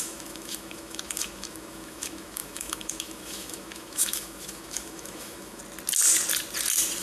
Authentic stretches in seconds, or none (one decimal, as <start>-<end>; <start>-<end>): 5.6-7.0